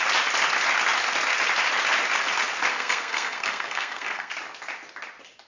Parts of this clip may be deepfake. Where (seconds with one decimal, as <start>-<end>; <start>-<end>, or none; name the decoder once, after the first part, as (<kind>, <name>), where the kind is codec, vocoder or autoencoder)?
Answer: 2.7-4.3 (codec, SNAC)